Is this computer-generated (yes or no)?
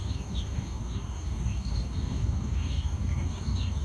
yes